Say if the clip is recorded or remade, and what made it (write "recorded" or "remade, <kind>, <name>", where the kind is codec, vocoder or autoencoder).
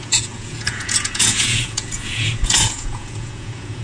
remade, vocoder, Vocos